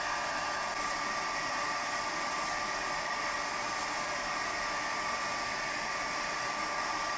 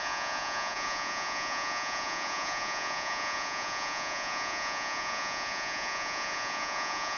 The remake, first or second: second